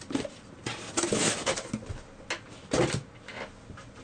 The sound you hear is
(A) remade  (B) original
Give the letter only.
B